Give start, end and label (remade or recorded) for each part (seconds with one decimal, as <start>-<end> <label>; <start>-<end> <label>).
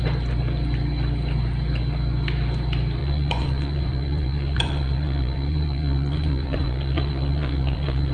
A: 0.0-3.0 recorded; 3.0-8.1 remade